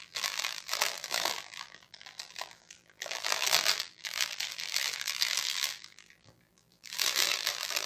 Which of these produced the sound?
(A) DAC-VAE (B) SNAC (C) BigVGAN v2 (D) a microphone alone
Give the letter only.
C